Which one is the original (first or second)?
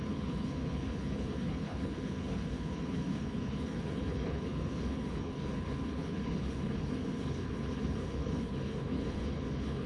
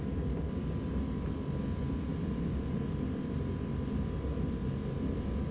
second